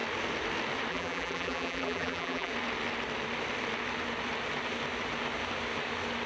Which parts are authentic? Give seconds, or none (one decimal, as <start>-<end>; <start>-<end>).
0.0-0.9; 2.5-6.3